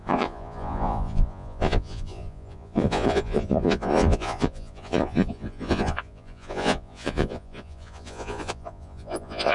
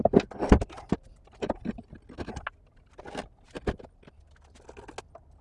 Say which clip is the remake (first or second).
first